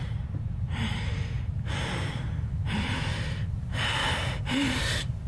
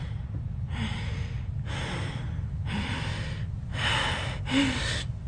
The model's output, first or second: first